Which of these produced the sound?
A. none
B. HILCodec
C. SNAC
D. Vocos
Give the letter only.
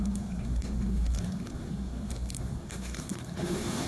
C